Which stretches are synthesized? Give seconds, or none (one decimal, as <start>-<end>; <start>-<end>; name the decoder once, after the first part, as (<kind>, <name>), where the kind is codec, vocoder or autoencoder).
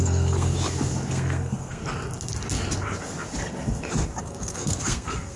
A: 0.0-0.5 (codec, SNAC); 1.1-1.8; 4.2-5.4